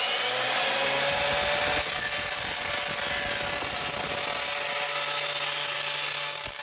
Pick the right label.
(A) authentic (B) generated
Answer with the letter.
A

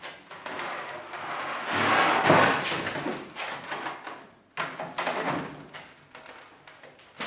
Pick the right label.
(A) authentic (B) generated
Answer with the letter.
A